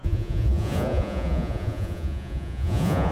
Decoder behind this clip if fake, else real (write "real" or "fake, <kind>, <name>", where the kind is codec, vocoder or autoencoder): fake, vocoder, Vocos